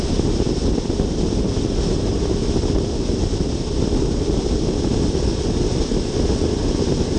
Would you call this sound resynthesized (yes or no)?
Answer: no